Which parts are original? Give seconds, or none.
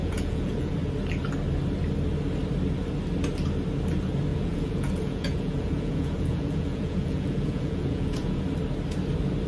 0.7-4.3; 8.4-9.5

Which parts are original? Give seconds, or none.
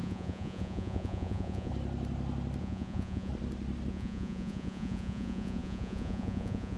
1.7-2.6; 3.3-3.9